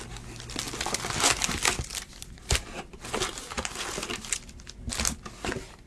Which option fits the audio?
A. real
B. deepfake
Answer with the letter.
A